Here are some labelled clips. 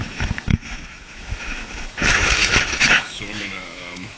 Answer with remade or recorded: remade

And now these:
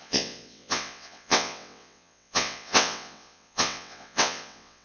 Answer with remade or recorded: remade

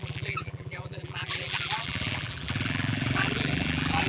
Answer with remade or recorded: remade